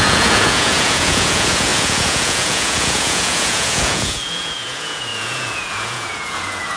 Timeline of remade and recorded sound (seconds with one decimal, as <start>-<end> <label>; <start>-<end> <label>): 0.0-6.8 remade